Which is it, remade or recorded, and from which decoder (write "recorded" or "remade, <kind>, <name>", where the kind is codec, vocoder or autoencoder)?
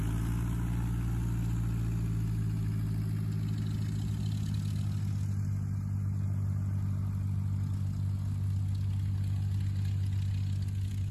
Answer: recorded